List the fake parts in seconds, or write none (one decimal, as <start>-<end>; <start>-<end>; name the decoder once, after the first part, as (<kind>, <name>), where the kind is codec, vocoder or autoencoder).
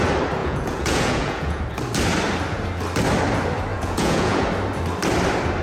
0.4-1.6 (vocoder, Vocos); 3.7-4.5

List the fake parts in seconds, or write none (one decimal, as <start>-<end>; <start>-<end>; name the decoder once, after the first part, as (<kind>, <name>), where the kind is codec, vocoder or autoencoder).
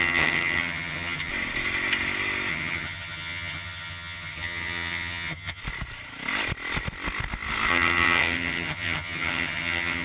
0.0-1.3 (vocoder, HiFi-GAN); 2.5-5.6; 7.7-10.0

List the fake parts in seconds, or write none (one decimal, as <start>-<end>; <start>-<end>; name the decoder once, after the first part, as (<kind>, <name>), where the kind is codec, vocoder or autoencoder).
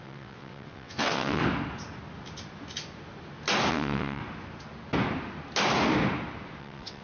0.0-1.4 (vocoder, WaveNeXt); 3.7-4.2; 6.6-7.0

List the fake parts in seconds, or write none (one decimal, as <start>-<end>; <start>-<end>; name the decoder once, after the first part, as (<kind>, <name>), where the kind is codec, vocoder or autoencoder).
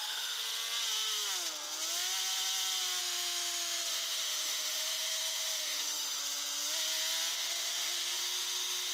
0.0-0.4 (autoencoder, DAC-VAE); 3.0-6.2; 7.3-8.9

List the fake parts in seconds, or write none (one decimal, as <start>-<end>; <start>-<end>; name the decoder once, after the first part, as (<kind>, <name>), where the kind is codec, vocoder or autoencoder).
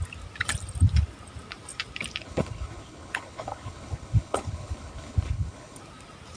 2.2-5.8 (codec, HILCodec)